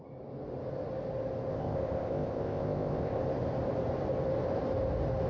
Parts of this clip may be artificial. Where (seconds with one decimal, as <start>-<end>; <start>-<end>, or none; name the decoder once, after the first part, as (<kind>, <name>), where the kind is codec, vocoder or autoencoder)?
1.5-3.2 (codec, ZipCodec)